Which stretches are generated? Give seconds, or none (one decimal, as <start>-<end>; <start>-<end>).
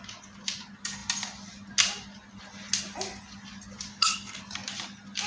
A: 3.9-4.4